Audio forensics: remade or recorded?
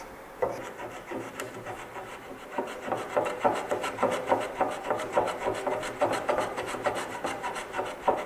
remade